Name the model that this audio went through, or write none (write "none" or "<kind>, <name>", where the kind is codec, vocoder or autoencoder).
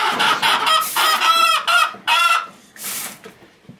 vocoder, BigVGAN v2